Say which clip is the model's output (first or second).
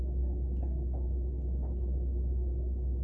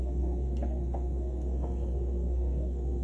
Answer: second